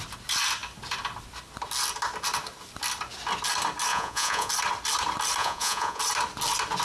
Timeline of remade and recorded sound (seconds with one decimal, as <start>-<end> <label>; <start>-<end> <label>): 0.0-3.9 recorded; 3.9-4.5 remade; 4.5-5.4 recorded; 5.4-6.0 remade; 6.0-6.8 recorded